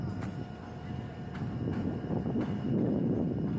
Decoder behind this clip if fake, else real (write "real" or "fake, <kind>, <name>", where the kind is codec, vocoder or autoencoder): real